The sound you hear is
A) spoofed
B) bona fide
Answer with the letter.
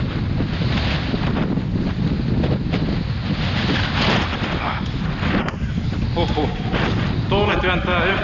B